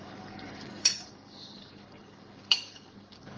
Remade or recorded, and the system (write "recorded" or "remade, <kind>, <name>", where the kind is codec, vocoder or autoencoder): remade, codec, DAC